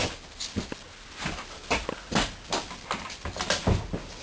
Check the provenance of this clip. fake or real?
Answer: real